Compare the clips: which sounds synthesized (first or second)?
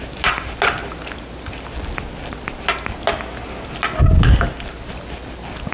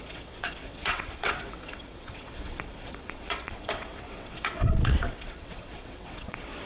second